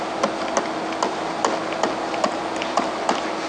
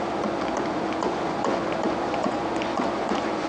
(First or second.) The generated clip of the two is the second